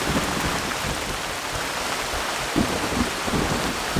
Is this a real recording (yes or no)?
no